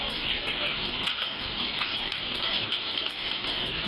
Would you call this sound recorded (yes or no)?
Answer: no